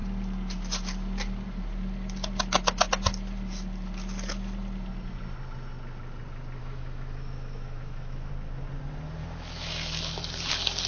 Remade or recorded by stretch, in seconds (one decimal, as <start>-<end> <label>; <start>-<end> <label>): 0.0-6.6 recorded; 6.6-8.3 remade; 8.3-9.2 recorded; 9.2-10.0 remade; 10.0-10.9 recorded